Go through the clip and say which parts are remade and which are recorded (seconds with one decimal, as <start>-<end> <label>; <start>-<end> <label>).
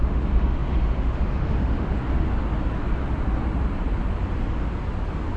0.0-2.0 remade; 2.0-5.4 recorded